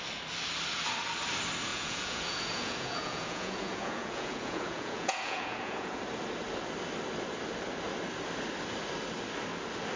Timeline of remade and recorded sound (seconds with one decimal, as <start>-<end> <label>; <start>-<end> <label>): 0.0-1.7 recorded; 1.7-6.0 remade; 6.0-10.0 recorded